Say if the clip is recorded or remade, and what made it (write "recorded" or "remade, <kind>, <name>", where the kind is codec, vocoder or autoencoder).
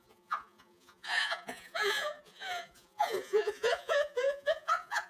remade, vocoder, Vocos